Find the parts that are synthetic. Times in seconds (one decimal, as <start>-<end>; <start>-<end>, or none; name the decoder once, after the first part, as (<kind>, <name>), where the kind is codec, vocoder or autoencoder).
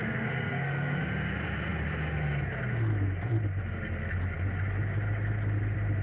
0.0-1.0 (codec, SNAC)